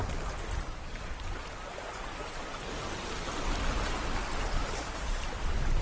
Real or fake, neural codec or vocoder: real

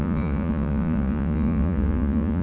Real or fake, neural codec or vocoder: fake, vocoder, Vocos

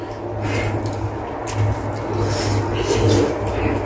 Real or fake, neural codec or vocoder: real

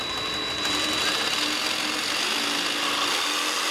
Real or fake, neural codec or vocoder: real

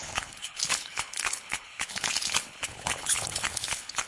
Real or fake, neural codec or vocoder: fake, codec, HILCodec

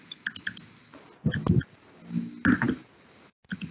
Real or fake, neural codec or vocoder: real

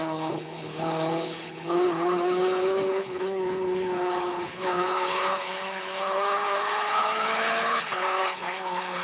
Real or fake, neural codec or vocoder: fake, codec, HILCodec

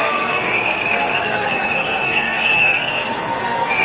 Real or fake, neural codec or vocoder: fake, codec, SNAC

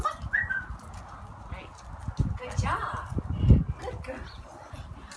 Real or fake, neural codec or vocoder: real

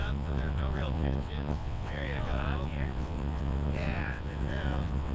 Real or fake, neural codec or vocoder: fake, vocoder, WaveNeXt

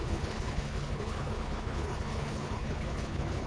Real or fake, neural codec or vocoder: fake, codec, HILCodec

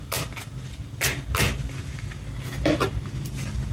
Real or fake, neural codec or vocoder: real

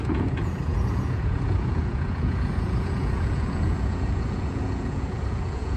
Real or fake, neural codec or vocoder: fake, vocoder, Vocos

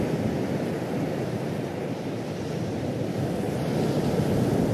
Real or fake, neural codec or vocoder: fake, vocoder, BigVGAN v2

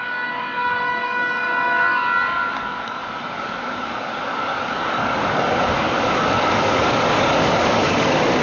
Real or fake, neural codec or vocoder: fake, codec, DAC